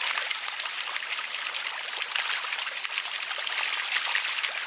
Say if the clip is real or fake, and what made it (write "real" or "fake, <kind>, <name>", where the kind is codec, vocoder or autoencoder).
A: real